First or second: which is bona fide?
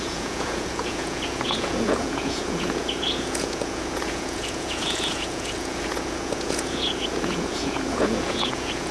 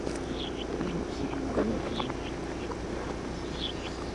second